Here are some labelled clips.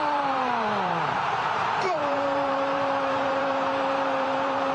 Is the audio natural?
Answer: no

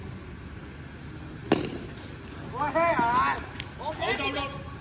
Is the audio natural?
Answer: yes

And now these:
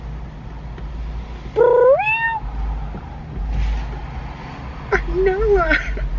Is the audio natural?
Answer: yes